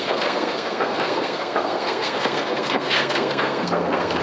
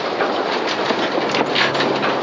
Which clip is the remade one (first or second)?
first